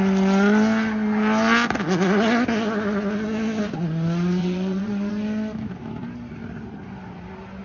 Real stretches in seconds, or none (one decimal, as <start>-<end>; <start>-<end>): 0.0-4.4; 5.1-7.6